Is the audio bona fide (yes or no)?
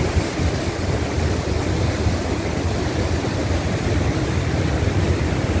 yes